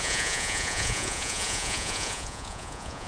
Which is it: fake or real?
fake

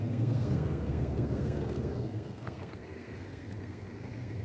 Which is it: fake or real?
fake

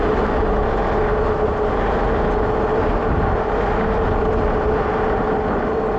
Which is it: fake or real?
real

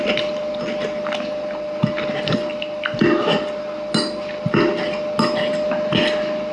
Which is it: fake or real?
real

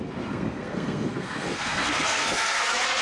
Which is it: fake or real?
fake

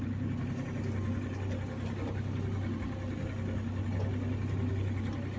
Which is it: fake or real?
real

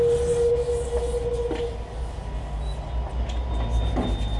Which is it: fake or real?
real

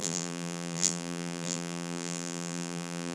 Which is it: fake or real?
fake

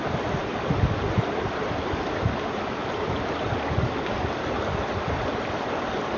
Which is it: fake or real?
real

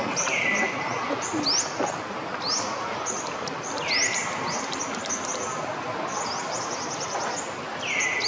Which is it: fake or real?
real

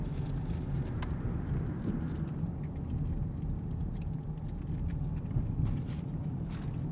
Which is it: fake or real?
real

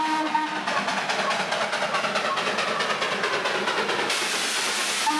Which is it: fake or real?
real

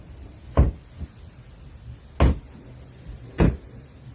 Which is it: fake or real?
real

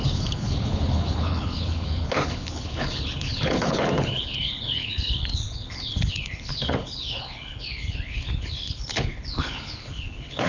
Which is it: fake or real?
fake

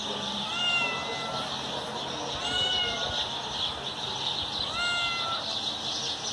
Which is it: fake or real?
real